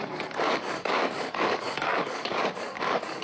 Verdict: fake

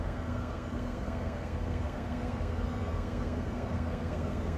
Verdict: fake